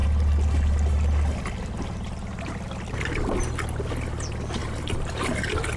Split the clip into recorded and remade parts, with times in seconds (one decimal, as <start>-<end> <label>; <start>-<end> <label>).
0.0-5.8 recorded